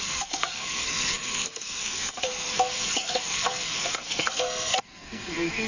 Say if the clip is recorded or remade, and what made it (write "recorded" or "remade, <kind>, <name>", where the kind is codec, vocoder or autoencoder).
remade, codec, SNAC